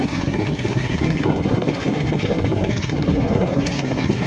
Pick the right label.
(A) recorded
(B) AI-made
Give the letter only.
B